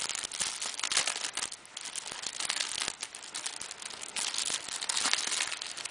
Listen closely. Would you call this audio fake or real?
real